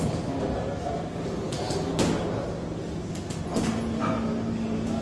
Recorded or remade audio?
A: recorded